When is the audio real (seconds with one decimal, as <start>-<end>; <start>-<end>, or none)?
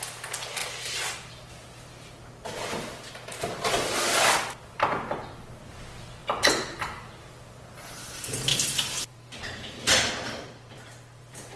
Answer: 0.0-8.5